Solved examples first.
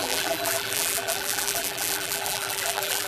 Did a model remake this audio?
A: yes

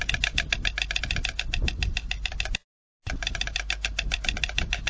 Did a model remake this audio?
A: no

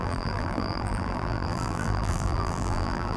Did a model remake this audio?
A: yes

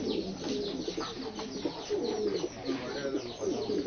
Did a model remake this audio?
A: no